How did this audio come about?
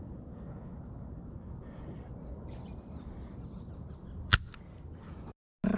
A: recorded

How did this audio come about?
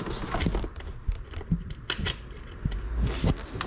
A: recorded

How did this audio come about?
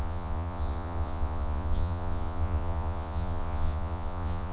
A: remade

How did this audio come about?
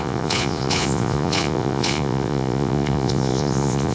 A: remade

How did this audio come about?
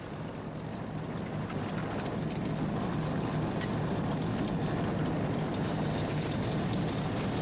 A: recorded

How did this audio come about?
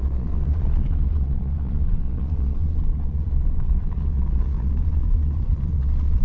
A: remade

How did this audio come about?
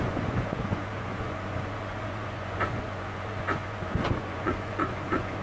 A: remade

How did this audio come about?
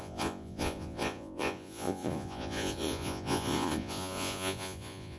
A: remade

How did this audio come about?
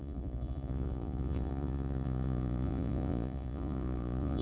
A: remade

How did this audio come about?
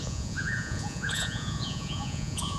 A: remade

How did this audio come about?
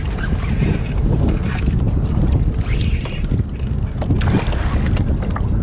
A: recorded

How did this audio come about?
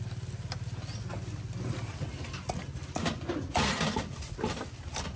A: recorded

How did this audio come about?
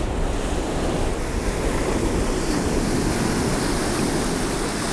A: recorded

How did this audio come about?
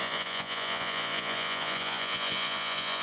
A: remade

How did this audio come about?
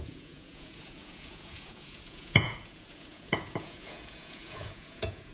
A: remade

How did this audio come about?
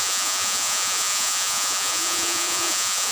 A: remade